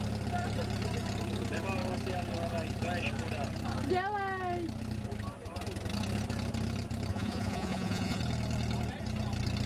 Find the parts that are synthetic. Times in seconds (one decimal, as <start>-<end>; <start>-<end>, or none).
7.1-8.2